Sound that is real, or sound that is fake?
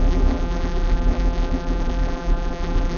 fake